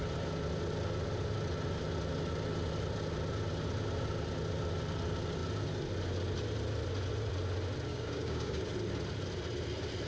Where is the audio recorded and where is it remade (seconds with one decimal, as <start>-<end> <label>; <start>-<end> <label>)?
0.0-7.9 recorded; 7.9-8.6 remade; 8.6-10.1 recorded

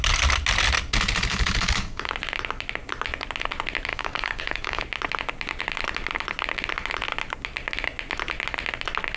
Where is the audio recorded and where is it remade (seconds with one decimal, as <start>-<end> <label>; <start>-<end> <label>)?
0.0-1.3 recorded; 1.3-2.1 remade; 2.1-3.9 recorded; 3.9-4.8 remade; 4.8-9.2 recorded

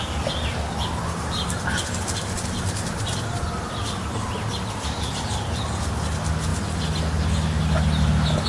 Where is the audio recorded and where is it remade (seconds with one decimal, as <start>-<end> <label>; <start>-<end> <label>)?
0.0-8.5 recorded

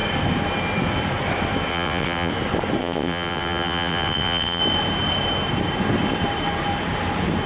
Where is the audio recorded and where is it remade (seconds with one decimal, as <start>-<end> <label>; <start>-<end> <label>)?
0.0-1.7 recorded; 1.7-2.3 remade; 2.3-2.8 recorded; 2.8-4.6 remade; 4.6-7.5 recorded

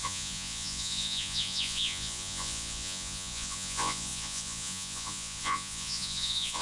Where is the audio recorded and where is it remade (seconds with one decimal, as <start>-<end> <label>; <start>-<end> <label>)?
0.0-6.6 remade

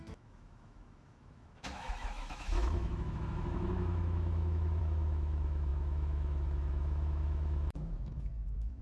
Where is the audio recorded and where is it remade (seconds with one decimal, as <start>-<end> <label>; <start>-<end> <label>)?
0.0-8.8 remade